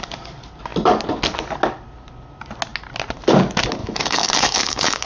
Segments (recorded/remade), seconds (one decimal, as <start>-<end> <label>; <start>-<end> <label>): 0.0-3.8 recorded; 3.8-5.1 remade